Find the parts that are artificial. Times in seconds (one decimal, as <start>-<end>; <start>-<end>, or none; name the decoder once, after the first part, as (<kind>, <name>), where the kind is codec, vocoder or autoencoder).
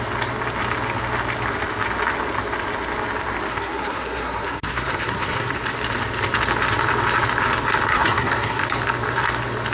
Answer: 3.5-5.5 (codec, SNAC); 7.9-8.6